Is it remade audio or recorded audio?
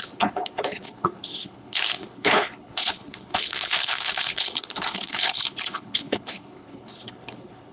remade